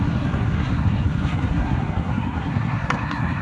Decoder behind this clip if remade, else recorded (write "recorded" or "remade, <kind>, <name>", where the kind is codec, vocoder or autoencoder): remade, codec, SNAC